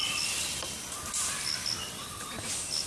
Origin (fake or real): real